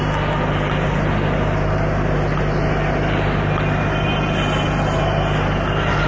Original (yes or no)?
yes